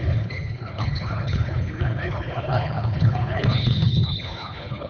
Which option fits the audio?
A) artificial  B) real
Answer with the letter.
A